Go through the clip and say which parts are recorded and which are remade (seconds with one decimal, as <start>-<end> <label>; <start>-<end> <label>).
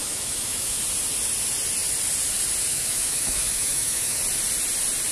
0.0-0.8 remade; 0.8-2.7 recorded; 2.7-4.2 remade; 4.2-5.1 recorded